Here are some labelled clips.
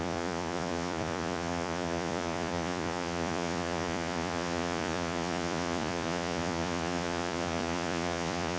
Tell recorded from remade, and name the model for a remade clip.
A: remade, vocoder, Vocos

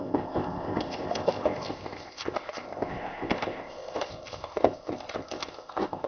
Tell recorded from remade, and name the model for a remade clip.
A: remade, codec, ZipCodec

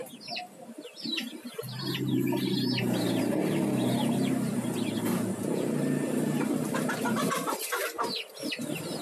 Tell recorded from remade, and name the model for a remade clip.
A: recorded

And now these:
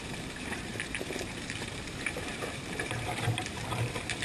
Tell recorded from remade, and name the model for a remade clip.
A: remade, vocoder, BigVGAN v2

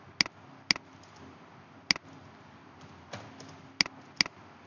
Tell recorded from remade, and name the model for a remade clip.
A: recorded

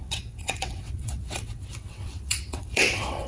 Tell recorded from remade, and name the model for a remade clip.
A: remade, vocoder, WaveNeXt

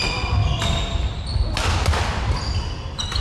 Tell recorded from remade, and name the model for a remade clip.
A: recorded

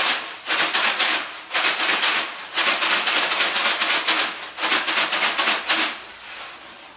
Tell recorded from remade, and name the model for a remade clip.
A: recorded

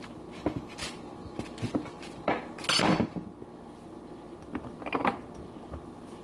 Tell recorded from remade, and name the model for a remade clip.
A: recorded